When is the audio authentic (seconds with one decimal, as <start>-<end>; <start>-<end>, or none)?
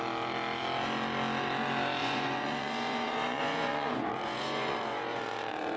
0.0-2.0